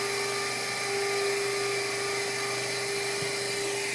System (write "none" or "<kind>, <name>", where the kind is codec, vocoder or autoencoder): none